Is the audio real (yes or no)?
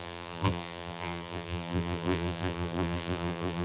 no